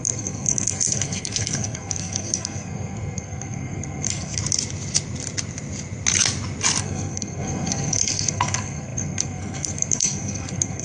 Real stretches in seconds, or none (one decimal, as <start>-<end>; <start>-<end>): 4.4-6.8